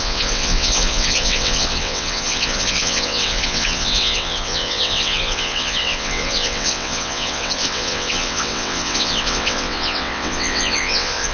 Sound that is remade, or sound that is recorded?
remade